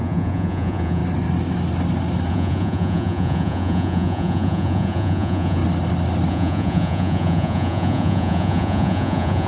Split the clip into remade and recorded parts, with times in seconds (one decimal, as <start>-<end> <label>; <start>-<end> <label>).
0.0-1.0 remade; 1.0-2.3 recorded; 2.3-5.6 remade; 5.6-6.3 recorded; 6.3-9.5 remade

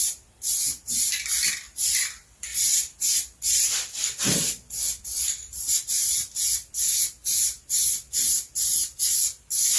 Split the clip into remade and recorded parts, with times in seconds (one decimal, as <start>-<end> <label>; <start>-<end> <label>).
0.0-9.8 remade